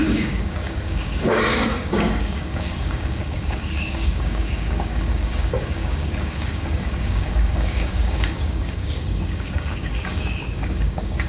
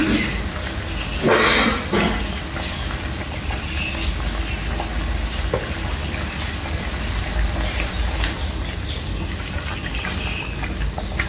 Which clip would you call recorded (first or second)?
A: second